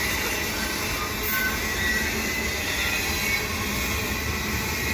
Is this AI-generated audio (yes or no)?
no